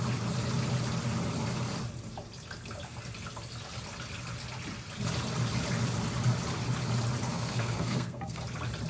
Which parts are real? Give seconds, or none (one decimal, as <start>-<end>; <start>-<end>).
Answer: 0.0-7.3; 8.4-8.9